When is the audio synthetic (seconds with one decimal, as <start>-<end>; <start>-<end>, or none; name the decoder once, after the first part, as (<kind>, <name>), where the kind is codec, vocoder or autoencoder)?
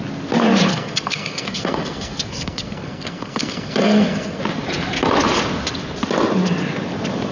0.7-4.4 (codec, SNAC)